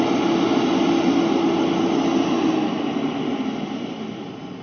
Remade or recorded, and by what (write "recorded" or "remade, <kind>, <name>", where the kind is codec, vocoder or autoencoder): recorded